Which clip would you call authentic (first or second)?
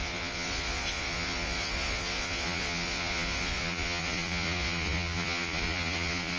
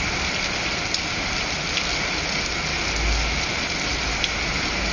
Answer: second